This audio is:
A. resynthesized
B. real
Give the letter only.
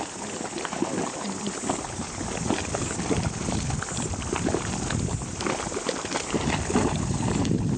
B